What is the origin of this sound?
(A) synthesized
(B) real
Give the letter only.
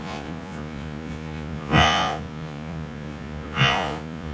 A